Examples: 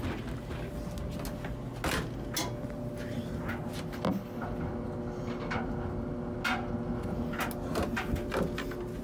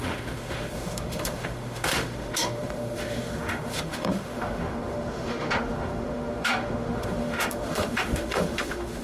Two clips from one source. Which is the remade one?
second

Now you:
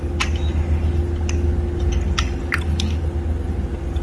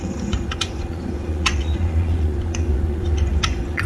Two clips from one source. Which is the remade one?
second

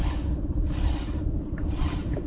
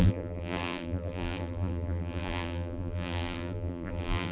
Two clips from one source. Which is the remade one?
second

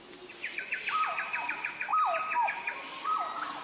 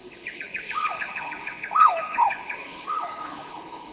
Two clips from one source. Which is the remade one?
second